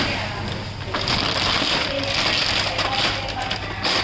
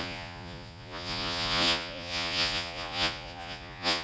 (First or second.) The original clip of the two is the first